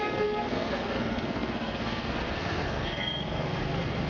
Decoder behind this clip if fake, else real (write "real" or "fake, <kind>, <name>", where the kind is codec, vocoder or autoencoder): fake, codec, SNAC